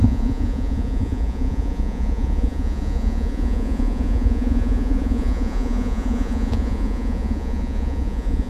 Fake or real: fake